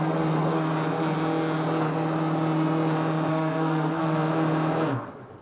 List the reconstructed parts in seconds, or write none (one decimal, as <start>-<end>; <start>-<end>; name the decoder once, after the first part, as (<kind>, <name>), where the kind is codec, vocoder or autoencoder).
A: 0.0-0.7 (codec, SNAC); 3.3-4.3